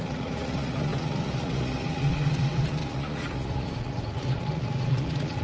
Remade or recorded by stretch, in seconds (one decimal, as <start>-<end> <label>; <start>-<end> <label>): 0.0-5.4 remade